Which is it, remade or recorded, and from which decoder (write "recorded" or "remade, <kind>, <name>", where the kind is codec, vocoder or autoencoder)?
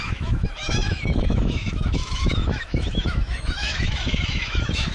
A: remade, autoencoder, DAC-VAE